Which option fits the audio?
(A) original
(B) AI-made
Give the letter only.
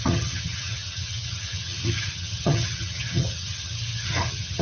B